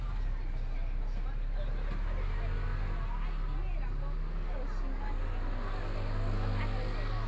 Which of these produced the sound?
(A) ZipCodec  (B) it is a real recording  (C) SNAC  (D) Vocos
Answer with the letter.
B